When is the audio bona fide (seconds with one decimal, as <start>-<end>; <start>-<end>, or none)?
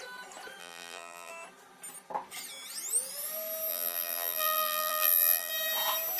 0.0-0.6; 1.3-3.7; 5.5-6.2